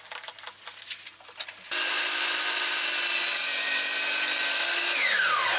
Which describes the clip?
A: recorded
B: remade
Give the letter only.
A